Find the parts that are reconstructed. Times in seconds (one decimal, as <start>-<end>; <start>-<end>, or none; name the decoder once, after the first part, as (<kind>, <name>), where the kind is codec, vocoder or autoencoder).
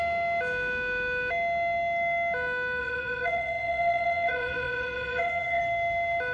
2.8-5.6 (vocoder, WaveNeXt)